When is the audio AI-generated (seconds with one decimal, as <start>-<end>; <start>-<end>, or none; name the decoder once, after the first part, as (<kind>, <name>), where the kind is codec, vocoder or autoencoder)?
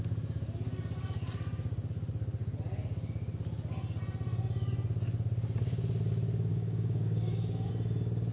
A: 6.5-7.7 (codec, DAC)